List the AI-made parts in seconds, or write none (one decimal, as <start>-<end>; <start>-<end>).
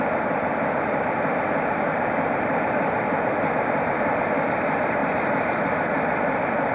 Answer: none